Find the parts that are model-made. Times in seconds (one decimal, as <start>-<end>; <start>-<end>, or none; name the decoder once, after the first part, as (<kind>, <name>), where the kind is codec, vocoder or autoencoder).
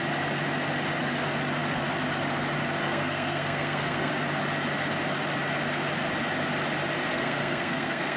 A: 2.8-4.1 (codec, SNAC); 7.1-8.2